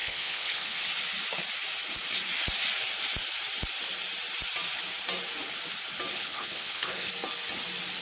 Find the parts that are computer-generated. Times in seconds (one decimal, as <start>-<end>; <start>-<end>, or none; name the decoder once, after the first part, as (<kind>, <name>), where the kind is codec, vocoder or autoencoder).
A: 0.0-0.8 (codec, HILCodec); 6.1-7.1